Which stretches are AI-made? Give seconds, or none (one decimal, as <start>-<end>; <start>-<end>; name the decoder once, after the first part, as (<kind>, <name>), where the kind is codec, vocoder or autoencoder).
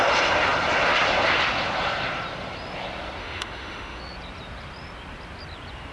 3.2-4.0 (autoencoder, DAC-VAE)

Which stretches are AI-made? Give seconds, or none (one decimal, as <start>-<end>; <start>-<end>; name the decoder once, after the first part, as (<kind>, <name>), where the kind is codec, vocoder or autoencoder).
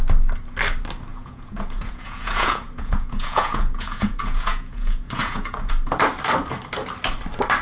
1.1-5.7 (vocoder, Vocos)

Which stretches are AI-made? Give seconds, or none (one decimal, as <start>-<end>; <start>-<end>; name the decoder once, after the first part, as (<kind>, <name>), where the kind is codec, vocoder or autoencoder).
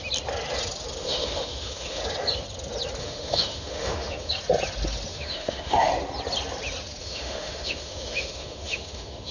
1.0-2.0 (autoencoder, DAC-VAE); 3.0-4.3; 5.1-5.9; 7.0-9.3